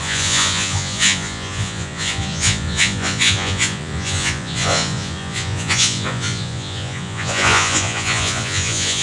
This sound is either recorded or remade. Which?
remade